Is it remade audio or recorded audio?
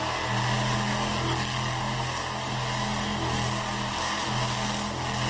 recorded